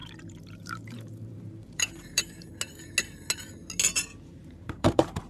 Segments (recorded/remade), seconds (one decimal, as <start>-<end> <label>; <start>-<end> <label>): 0.0-2.5 remade; 2.5-4.3 recorded; 4.3-5.3 remade